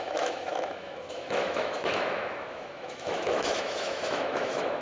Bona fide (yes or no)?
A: no